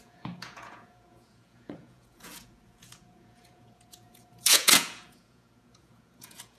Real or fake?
fake